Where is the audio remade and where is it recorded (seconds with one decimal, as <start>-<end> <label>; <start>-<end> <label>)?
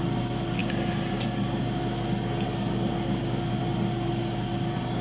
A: 0.0-5.0 recorded